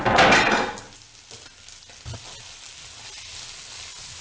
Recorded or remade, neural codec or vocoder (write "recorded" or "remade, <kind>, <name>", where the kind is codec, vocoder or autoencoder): recorded